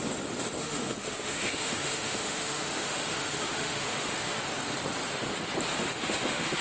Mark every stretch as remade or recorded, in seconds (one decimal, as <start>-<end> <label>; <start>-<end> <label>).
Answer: 0.0-0.6 recorded; 0.6-4.4 remade; 4.4-5.7 recorded; 5.7-6.6 remade

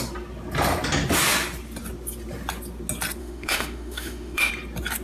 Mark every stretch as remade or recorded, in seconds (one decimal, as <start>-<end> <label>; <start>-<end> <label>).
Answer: 0.0-3.2 recorded; 3.2-4.5 remade; 4.5-5.0 recorded